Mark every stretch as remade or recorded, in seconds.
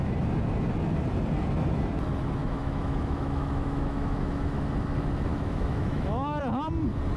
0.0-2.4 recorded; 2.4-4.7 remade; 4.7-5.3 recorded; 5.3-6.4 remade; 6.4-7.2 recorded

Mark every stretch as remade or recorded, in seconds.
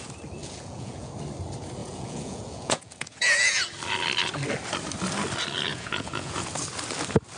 0.0-0.4 recorded; 0.4-1.1 remade; 1.1-1.8 recorded; 1.8-3.6 remade; 3.6-5.7 recorded; 5.7-6.5 remade; 6.5-7.4 recorded